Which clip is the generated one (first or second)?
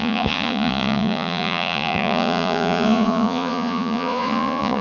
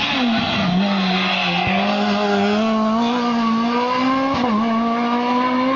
first